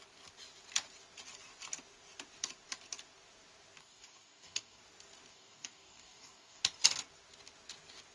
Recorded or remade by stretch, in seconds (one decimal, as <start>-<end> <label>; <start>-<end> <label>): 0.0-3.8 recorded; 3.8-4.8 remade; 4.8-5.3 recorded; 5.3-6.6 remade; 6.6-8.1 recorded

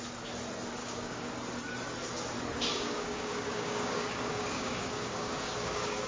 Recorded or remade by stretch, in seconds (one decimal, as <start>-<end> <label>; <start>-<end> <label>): 0.0-0.8 recorded; 0.8-1.3 remade; 1.3-2.7 recorded; 2.7-6.1 remade

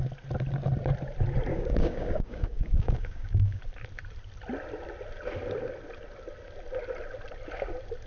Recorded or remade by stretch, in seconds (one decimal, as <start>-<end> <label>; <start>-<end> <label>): 0.0-1.5 recorded; 1.5-3.6 remade; 3.6-8.1 recorded

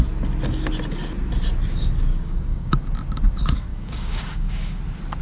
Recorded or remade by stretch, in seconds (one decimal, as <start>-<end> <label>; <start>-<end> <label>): 0.0-2.1 recorded; 2.1-2.7 remade; 2.7-3.7 recorded; 3.7-4.8 remade; 4.8-5.2 recorded